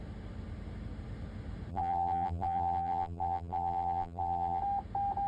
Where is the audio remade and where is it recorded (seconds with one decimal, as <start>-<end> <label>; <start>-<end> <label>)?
0.0-1.7 recorded; 1.7-4.6 remade; 4.6-5.3 recorded